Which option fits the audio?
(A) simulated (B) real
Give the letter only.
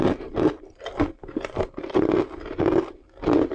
B